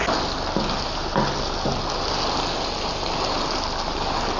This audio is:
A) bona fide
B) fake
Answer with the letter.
A